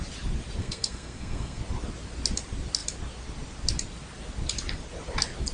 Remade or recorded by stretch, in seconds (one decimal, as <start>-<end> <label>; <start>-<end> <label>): 0.0-0.6 recorded; 0.6-1.6 remade; 1.6-5.5 recorded